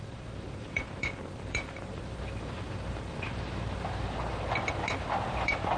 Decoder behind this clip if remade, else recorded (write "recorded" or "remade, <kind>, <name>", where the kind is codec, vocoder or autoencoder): remade, vocoder, BigVGAN v2